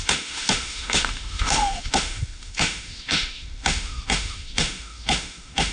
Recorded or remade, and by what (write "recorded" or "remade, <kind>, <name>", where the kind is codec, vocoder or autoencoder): remade, autoencoder, DAC-VAE